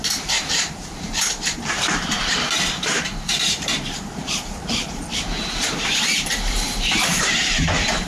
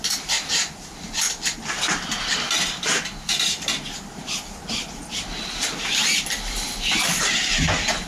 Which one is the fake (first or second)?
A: first